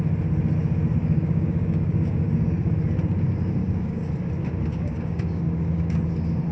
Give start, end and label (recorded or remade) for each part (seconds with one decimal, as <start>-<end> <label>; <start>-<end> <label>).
0.0-1.0 recorded; 1.0-2.7 remade; 2.7-3.6 recorded; 3.6-4.1 remade; 4.1-4.7 recorded; 4.7-6.0 remade; 6.0-6.5 recorded